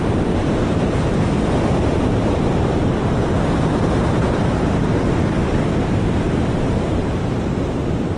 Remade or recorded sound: remade